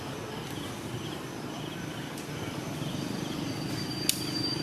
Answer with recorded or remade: recorded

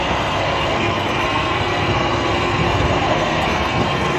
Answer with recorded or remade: remade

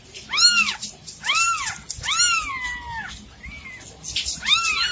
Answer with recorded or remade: recorded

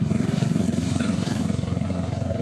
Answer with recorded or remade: remade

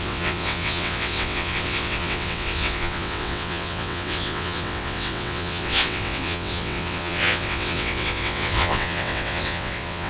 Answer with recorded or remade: remade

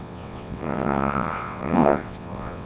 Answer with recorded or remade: remade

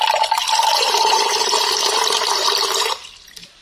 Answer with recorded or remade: remade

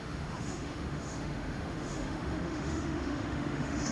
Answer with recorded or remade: remade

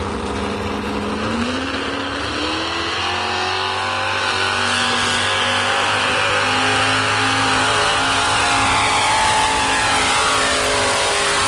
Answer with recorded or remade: recorded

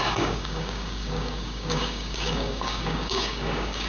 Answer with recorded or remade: remade